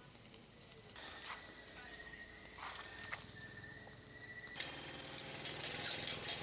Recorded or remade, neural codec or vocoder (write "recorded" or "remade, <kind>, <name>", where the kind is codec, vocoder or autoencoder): recorded